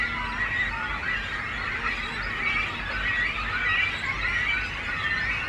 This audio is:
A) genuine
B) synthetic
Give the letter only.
A